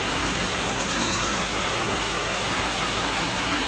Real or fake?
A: fake